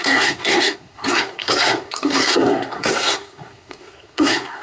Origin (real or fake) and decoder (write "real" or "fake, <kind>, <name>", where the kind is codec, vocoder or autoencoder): fake, codec, SNAC